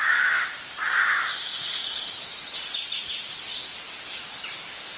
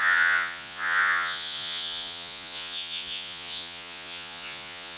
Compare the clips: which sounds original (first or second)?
first